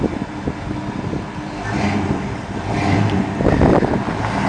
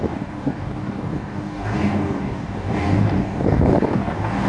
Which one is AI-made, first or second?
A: second